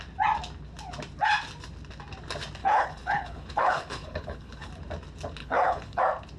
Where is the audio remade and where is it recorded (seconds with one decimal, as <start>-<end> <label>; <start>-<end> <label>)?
0.0-2.6 recorded; 2.6-4.7 remade; 4.7-5.4 recorded; 5.4-6.0 remade; 6.0-6.4 recorded